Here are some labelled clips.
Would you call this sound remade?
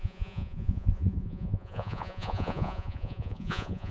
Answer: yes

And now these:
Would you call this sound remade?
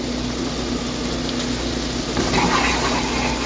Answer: no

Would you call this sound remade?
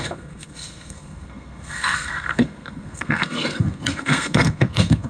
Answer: yes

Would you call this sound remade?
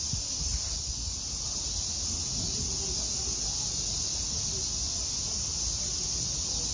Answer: no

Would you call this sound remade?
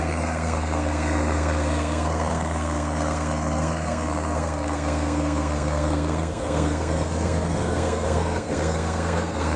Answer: yes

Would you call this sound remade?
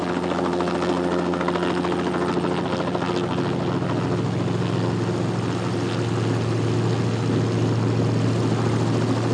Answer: no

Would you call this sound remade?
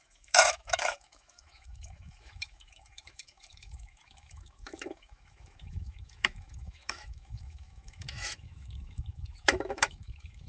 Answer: yes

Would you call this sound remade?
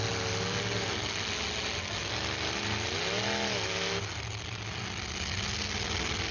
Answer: no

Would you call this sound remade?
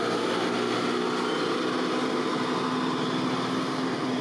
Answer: no